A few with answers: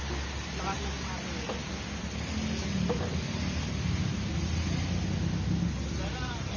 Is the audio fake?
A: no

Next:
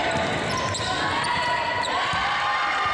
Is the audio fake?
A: no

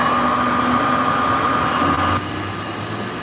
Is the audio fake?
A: no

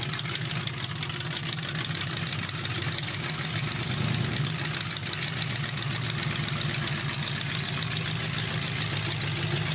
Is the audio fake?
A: no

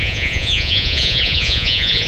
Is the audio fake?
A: yes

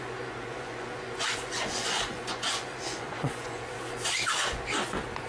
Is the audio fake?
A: yes